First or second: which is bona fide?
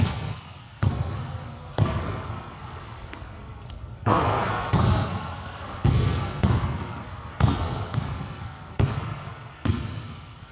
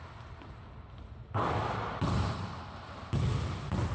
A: second